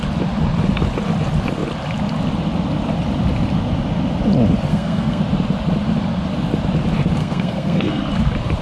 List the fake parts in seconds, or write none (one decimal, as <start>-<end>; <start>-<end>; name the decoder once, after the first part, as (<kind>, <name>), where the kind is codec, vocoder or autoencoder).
4.7-5.2 (codec, SNAC); 7.2-8.0